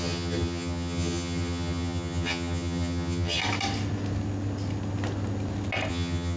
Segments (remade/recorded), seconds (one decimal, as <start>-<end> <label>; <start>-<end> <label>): 0.0-3.4 remade; 3.4-5.9 recorded; 5.9-6.4 remade